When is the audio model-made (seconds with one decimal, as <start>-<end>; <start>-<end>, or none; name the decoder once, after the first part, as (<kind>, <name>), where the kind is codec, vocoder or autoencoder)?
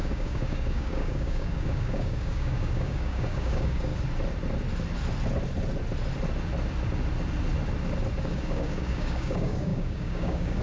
0.0-3.9 (codec, DAC); 8.2-10.6